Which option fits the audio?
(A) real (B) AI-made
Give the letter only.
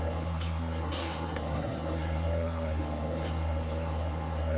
B